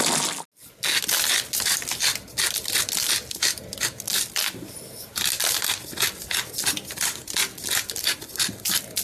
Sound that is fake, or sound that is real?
real